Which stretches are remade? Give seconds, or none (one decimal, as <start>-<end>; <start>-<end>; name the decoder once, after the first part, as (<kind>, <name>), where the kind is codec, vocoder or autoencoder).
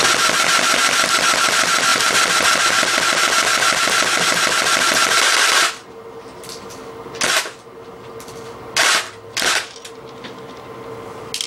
none